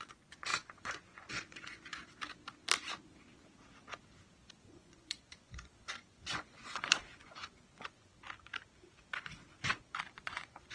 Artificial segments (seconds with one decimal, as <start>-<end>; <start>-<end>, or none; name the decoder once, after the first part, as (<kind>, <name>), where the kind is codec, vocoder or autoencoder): 0.0-2.0 (vocoder, Vocos); 4.6-8.1; 8.9-10.7